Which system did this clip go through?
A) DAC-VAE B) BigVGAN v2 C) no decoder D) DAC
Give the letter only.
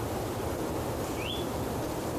B